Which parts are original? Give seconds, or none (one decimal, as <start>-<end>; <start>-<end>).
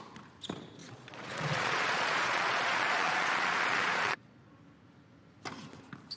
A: 0.0-0.8; 4.5-6.2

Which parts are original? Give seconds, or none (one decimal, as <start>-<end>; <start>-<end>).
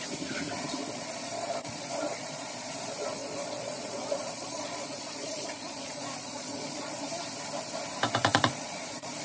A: 0.0-0.8; 2.7-3.2; 7.1-8.2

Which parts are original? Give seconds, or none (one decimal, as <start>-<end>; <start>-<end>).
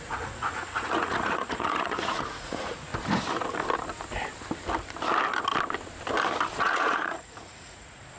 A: 2.9-6.6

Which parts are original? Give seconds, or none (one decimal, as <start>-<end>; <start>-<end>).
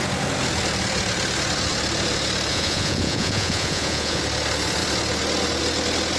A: 0.0-2.5; 4.2-6.2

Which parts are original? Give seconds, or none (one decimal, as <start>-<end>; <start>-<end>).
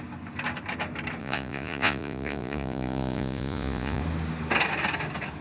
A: 0.0-1.2; 4.0-5.4